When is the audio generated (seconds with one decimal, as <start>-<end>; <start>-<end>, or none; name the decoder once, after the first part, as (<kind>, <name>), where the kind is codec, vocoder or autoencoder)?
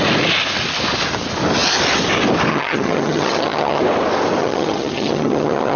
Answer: 2.5-3.8 (vocoder, HiFi-GAN); 4.4-5.8